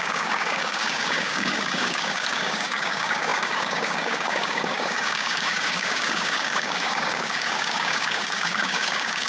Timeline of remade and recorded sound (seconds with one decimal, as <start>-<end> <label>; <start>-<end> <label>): 0.0-9.3 remade

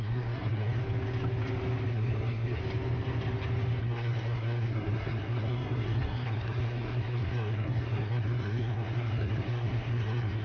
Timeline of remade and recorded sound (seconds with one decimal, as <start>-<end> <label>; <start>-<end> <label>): 0.0-0.8 remade; 0.8-1.9 recorded; 1.9-2.6 remade; 2.6-3.8 recorded; 3.8-10.4 remade